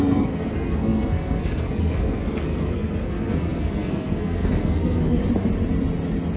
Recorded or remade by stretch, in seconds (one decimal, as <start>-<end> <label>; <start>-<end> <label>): 0.0-5.2 remade; 5.2-6.4 recorded